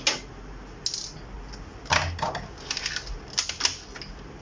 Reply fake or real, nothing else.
real